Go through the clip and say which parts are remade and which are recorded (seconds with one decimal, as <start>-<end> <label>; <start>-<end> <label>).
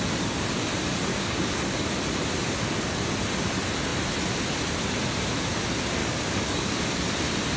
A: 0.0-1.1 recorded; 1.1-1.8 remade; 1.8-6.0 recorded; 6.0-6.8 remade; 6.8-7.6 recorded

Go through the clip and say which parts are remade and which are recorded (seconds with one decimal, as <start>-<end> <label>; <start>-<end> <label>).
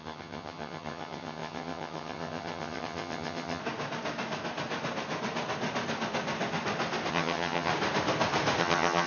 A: 0.0-3.6 remade; 3.6-7.1 recorded; 7.1-7.7 remade; 7.7-8.6 recorded; 8.6-9.1 remade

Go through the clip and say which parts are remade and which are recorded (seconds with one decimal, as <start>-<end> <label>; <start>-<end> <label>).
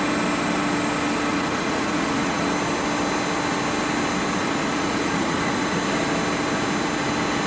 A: 0.0-1.3 recorded; 1.3-2.5 remade; 2.5-4.4 recorded; 4.4-5.8 remade; 5.8-7.5 recorded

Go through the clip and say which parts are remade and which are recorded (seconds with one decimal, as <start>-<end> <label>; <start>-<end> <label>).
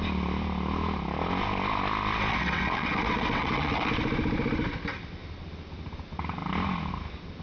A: 0.0-2.3 recorded; 2.3-3.9 remade; 3.9-7.4 recorded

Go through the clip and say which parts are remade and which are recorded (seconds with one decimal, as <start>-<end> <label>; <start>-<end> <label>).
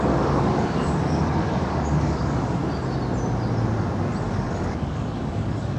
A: 0.0-2.6 remade; 2.6-4.2 recorded; 4.2-5.8 remade